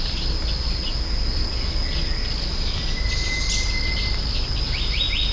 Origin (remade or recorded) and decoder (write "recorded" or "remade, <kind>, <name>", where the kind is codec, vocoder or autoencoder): recorded